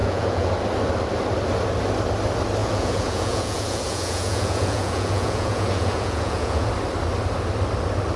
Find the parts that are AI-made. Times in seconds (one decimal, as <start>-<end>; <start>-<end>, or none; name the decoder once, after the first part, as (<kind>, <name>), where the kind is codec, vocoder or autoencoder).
0.0-0.5 (vocoder, Vocos); 2.6-6.7